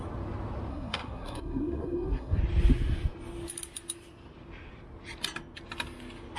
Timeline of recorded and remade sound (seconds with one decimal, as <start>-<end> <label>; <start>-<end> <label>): 0.0-0.7 recorded; 0.7-2.4 remade; 2.4-6.4 recorded